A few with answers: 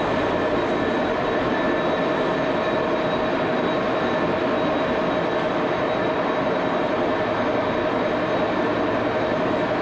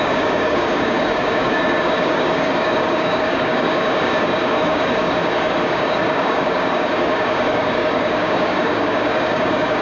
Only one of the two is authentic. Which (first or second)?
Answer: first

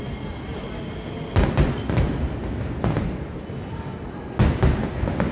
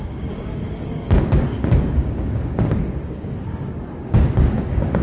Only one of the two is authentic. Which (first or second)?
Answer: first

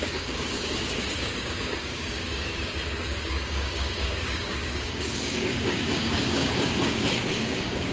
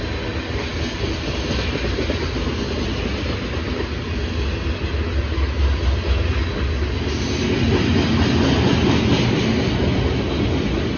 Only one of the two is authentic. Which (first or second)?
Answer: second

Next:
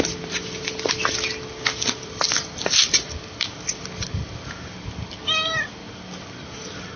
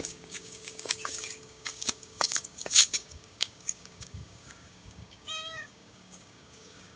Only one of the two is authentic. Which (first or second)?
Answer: first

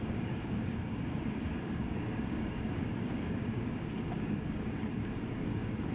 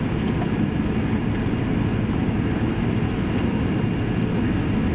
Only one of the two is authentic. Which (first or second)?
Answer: second